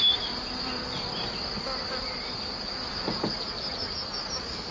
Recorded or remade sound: recorded